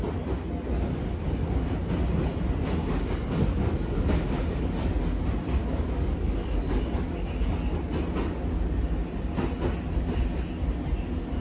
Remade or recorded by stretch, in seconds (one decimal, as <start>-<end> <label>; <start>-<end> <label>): 0.0-2.8 recorded; 2.8-4.7 remade; 4.7-5.6 recorded; 5.6-6.8 remade; 6.8-11.4 recorded

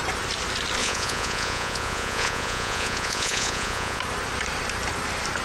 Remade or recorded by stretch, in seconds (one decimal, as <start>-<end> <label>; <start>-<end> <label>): 0.0-0.8 recorded; 0.8-4.0 remade; 4.0-5.4 recorded

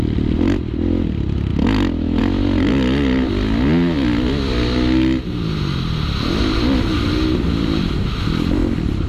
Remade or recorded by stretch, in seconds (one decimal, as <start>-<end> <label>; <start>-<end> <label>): 0.0-9.1 recorded

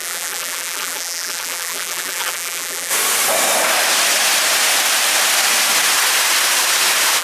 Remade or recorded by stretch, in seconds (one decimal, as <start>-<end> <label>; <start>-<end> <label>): 0.0-2.9 remade; 2.9-7.2 recorded

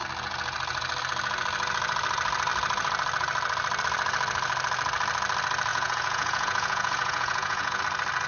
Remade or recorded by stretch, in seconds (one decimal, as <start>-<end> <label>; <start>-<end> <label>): 0.0-5.7 recorded; 5.7-7.8 remade; 7.8-8.3 recorded